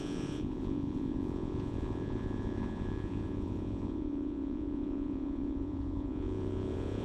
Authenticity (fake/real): fake